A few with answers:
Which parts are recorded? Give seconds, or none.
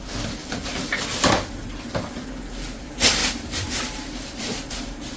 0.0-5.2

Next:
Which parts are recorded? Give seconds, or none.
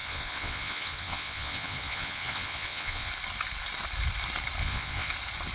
3.1-4.6; 5.1-5.5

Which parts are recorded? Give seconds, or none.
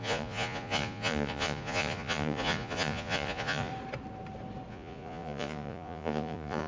3.7-4.7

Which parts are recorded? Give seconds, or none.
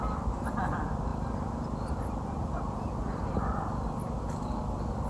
0.0-5.1